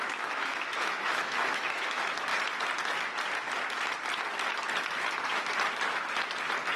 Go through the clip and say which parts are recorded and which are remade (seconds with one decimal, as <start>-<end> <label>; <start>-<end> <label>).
0.0-2.3 remade; 2.3-6.8 recorded